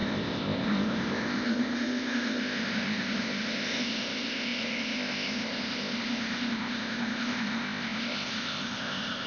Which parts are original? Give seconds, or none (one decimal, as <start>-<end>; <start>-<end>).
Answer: none